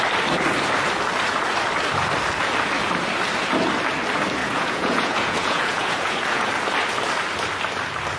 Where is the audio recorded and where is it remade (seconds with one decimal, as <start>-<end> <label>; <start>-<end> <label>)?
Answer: 0.0-4.4 recorded; 4.4-6.5 remade; 6.5-8.2 recorded